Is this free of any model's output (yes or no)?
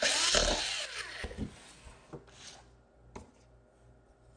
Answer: yes